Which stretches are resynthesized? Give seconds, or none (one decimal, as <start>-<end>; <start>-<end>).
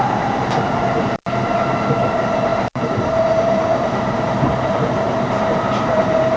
0.0-1.2; 2.1-6.4